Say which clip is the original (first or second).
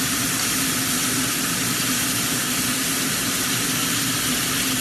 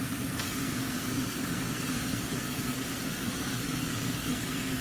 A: first